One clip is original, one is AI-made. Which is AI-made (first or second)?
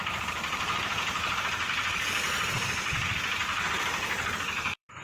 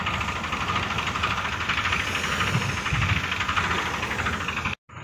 first